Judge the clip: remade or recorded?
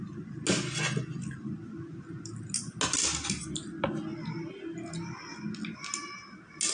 recorded